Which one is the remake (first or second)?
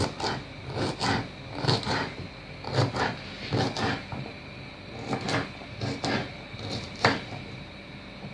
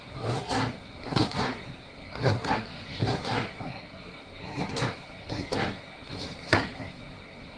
second